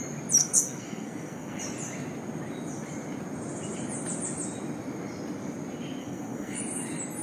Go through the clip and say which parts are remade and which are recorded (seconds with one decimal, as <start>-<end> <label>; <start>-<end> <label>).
0.0-0.4 recorded; 0.4-1.6 remade; 1.6-6.0 recorded; 6.0-6.6 remade; 6.6-7.2 recorded